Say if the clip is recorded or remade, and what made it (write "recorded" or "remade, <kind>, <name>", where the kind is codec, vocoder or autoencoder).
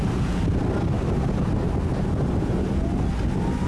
recorded